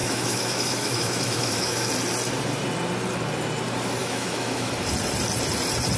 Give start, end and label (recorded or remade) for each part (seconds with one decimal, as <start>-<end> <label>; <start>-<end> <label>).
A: 0.0-1.9 remade; 1.9-4.0 recorded; 4.0-4.7 remade; 4.7-6.0 recorded